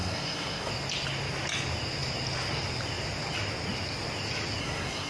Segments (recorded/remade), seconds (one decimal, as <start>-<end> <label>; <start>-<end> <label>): 0.0-0.7 remade; 0.7-4.6 recorded; 4.6-5.1 remade